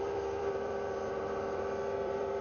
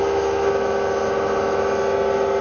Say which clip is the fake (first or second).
first